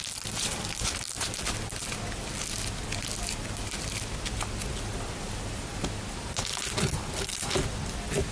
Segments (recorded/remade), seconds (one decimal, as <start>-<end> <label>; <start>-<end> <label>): 0.0-8.3 recorded